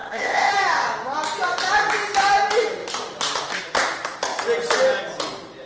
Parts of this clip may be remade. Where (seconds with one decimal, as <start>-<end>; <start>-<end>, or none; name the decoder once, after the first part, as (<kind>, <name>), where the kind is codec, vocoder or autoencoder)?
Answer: 0.0-0.5 (codec, ZipCodec)